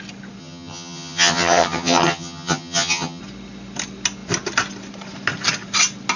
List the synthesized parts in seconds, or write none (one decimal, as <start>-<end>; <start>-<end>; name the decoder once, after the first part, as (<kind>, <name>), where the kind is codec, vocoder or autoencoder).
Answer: 0.4-3.2 (vocoder, HiFi-GAN)